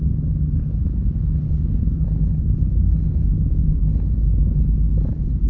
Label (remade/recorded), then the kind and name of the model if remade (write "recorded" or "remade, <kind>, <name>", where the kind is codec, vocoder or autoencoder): recorded